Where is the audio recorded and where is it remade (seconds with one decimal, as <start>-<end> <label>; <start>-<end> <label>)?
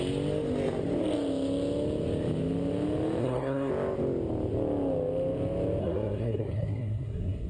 0.0-3.2 recorded; 3.2-3.7 remade; 3.7-5.8 recorded; 5.8-7.5 remade